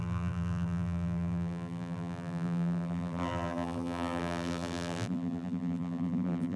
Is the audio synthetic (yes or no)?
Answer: yes